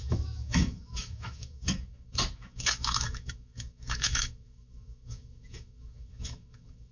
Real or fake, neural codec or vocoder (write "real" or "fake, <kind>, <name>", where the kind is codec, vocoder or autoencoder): fake, autoencoder, DAC-VAE